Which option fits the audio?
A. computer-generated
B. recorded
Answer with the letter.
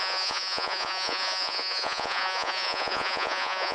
A